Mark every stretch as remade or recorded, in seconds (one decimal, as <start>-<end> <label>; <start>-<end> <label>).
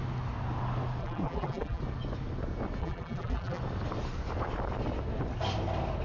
0.0-1.0 recorded; 1.0-1.8 remade; 1.8-2.8 recorded; 2.8-3.6 remade; 3.6-6.0 recorded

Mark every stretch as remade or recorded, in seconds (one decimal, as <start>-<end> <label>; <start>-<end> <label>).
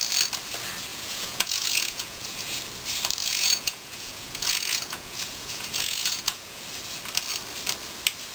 0.0-0.9 recorded; 0.9-2.6 remade; 2.6-3.2 recorded; 3.2-6.6 remade; 6.6-8.3 recorded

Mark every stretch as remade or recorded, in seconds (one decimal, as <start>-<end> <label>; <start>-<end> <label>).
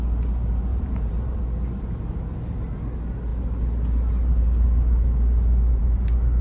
0.0-0.7 recorded; 0.7-1.4 remade; 1.4-6.4 recorded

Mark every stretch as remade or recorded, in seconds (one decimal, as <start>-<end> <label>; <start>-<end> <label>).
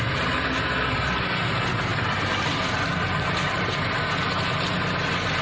0.0-1.9 recorded; 1.9-3.6 remade; 3.6-5.4 recorded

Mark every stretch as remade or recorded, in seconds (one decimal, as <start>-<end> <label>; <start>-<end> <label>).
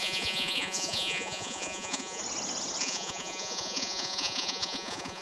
0.0-2.2 remade; 2.2-2.8 recorded; 2.8-5.2 remade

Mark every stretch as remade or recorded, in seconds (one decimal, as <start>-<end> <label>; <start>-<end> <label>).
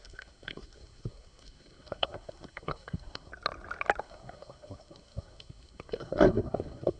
0.0-3.3 remade; 3.3-4.0 recorded; 4.0-7.0 remade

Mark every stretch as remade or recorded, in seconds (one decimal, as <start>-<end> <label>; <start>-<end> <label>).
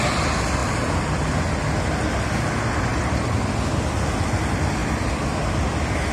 0.0-2.9 recorded; 2.9-3.7 remade; 3.7-6.1 recorded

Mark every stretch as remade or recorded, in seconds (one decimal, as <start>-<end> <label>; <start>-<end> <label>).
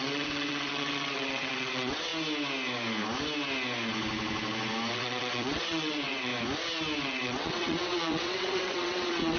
0.0-2.1 remade; 2.1-4.9 recorded; 4.9-6.3 remade; 6.3-7.0 recorded; 7.0-9.4 remade